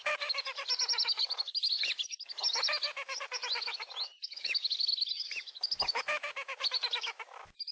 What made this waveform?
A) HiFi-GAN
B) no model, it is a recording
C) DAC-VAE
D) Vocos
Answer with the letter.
C